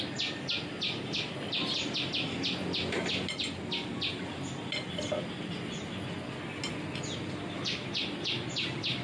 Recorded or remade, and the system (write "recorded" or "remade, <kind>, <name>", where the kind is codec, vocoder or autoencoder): recorded